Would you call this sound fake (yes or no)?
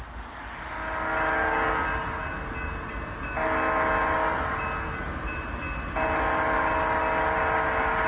no